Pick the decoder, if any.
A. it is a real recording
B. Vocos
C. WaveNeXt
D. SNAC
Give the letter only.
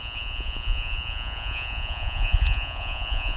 B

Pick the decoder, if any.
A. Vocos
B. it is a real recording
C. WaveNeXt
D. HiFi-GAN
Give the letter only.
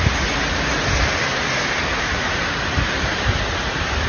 B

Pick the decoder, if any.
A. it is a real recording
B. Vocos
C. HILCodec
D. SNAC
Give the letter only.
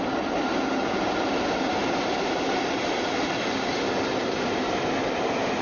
A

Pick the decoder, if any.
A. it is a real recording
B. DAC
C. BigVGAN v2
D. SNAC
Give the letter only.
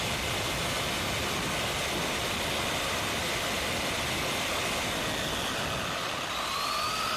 A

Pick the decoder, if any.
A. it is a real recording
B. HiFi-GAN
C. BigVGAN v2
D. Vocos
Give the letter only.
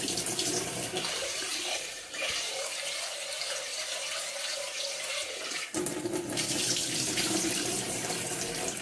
C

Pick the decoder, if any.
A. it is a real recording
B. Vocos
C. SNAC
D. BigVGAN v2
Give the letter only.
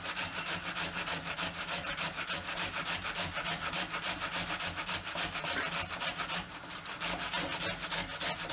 A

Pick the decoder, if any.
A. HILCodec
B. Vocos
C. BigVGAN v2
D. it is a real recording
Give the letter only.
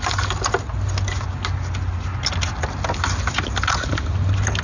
D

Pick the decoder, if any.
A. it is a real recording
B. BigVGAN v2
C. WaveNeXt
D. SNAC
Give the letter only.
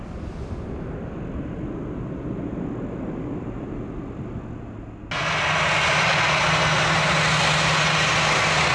A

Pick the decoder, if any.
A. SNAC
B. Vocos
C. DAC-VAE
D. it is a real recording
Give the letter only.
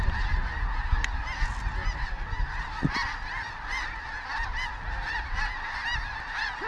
D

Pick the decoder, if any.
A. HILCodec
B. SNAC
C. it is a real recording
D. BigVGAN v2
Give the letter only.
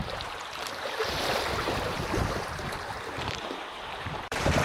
D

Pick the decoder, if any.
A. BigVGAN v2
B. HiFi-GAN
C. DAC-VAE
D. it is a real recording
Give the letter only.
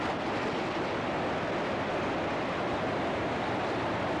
D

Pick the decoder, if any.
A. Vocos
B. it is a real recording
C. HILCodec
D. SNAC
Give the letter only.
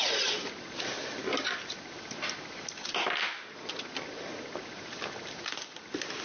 B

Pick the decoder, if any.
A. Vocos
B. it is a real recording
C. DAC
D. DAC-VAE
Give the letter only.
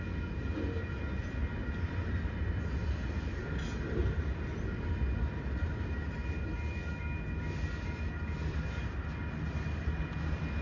B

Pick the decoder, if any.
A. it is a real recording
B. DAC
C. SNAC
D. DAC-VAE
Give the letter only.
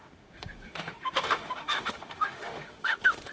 D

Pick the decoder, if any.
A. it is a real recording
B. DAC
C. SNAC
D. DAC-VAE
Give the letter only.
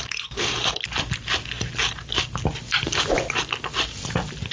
A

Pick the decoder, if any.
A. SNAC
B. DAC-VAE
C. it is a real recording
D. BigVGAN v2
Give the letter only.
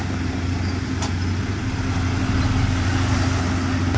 C